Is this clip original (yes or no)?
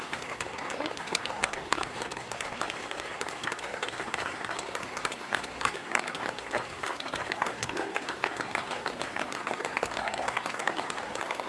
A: no